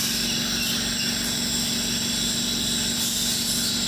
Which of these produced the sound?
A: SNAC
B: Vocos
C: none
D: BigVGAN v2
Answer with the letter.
C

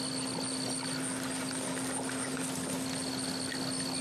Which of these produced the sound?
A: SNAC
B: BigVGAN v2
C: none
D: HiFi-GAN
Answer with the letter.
C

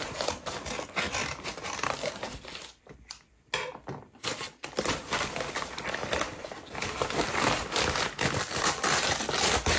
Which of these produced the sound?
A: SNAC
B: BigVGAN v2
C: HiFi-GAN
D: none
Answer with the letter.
B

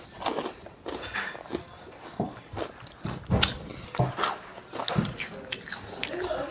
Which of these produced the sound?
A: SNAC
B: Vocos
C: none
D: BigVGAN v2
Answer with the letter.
C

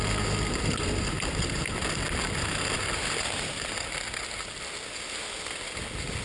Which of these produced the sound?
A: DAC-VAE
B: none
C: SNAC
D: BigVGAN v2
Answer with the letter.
B